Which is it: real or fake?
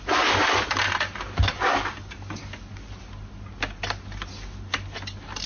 real